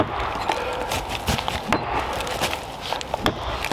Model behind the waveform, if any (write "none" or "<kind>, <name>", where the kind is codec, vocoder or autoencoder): none